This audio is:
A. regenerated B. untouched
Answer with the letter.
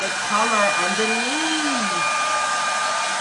B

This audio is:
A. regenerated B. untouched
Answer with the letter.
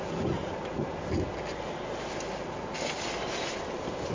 B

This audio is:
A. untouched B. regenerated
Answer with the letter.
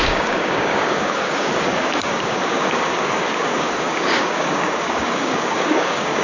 B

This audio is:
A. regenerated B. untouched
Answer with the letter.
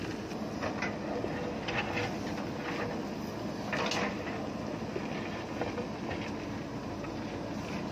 B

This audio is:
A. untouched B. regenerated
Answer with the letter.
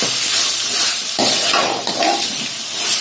A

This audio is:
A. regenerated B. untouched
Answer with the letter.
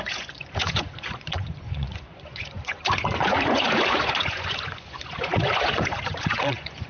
A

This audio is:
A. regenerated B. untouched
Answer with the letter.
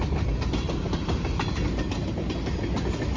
B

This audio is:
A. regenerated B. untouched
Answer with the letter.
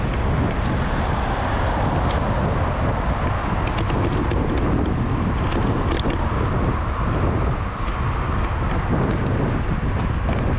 B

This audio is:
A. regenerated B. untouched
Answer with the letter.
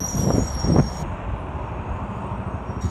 B